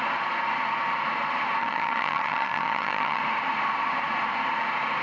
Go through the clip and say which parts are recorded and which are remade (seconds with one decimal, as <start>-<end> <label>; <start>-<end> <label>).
0.0-1.6 recorded; 1.6-3.2 remade; 3.2-5.0 recorded